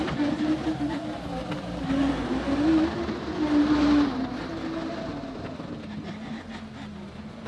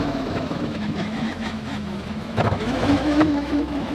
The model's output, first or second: second